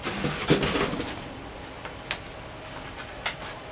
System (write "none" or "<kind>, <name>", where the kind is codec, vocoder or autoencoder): none